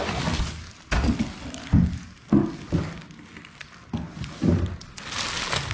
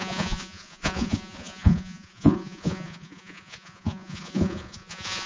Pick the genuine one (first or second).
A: first